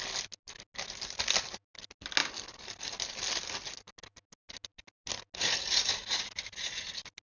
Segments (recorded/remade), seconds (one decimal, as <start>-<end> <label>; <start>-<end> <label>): 0.0-7.3 recorded